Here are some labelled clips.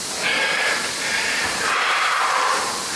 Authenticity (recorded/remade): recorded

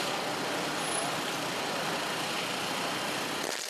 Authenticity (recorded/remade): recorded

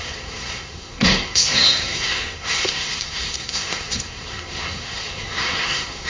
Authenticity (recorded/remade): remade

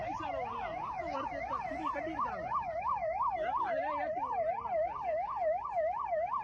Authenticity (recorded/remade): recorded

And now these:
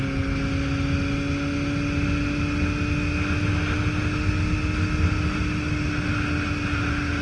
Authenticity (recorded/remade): recorded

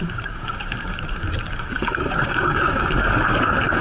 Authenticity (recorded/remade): remade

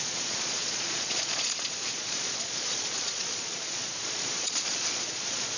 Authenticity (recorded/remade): remade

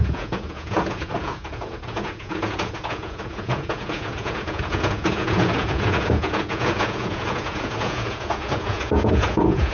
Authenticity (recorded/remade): remade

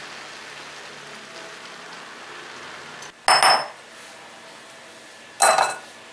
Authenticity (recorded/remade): recorded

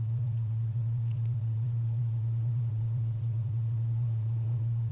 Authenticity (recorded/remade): remade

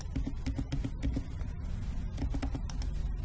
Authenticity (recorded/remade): recorded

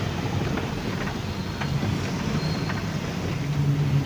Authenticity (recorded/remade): recorded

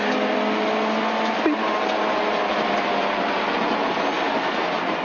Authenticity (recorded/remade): recorded